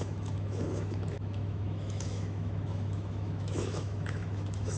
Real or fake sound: fake